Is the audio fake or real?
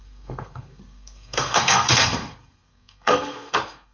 fake